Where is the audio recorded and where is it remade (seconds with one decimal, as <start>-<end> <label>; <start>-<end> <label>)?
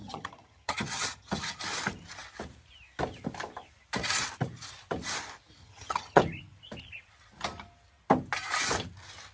0.0-1.6 remade; 1.6-5.6 recorded; 5.6-6.2 remade; 6.2-9.3 recorded